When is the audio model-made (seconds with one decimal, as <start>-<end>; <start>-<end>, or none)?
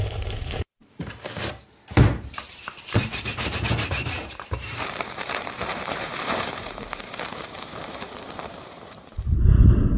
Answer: 0.0-10.0